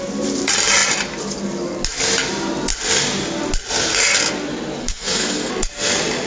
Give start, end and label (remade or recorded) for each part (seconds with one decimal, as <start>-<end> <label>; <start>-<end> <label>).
0.0-4.8 recorded; 4.8-5.5 remade; 5.5-6.3 recorded